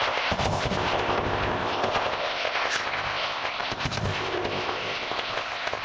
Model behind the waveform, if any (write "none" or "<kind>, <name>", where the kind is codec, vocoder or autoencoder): codec, ZipCodec